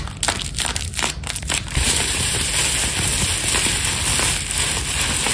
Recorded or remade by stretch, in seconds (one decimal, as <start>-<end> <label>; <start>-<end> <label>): 0.0-0.7 recorded; 0.7-2.5 remade; 2.5-5.3 recorded